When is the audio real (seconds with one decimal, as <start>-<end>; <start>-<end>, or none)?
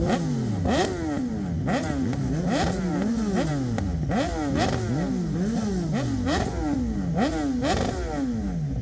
0.0-8.8